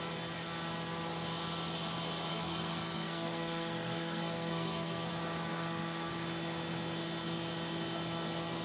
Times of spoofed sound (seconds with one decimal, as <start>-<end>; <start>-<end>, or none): 2.3-5.1; 5.5-6.1